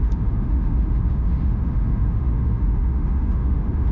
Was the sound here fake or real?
fake